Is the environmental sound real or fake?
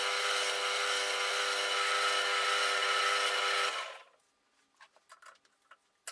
real